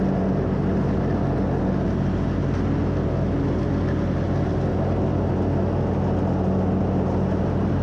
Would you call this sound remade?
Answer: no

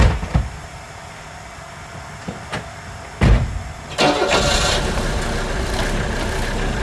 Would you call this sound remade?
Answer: no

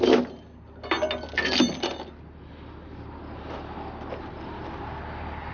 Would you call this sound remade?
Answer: no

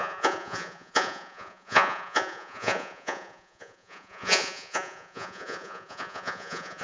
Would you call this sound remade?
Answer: yes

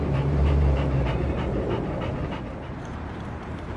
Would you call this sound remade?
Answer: yes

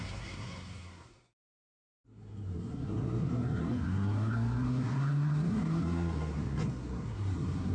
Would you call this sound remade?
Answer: yes